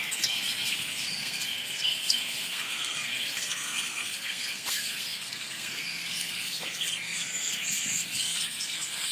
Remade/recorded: remade